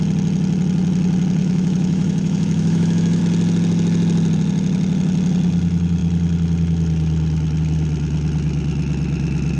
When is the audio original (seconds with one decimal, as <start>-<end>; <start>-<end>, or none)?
0.0-1.4; 3.2-9.6